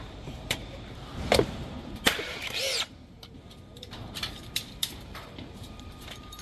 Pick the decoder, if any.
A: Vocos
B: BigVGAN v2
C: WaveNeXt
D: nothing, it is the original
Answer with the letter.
B